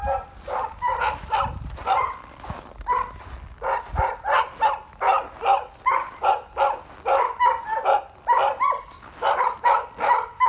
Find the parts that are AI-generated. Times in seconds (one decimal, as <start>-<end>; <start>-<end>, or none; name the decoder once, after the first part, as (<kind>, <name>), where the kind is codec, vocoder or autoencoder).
none